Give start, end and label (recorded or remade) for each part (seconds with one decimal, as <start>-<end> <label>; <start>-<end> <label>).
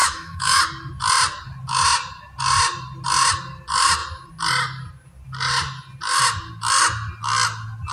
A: 0.0-0.6 remade; 0.6-7.9 recorded